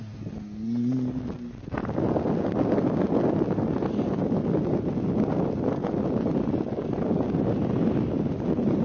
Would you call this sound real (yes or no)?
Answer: yes